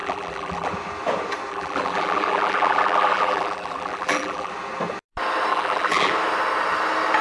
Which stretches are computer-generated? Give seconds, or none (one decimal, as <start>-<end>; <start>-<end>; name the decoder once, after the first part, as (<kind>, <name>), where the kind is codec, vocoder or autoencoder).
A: 0.0-0.7 (vocoder, BigVGAN v2); 1.5-4.5; 5.5-6.1